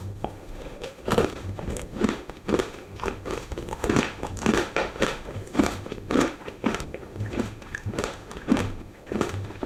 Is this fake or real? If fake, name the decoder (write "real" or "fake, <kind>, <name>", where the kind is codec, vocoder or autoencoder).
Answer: fake, autoencoder, DAC-VAE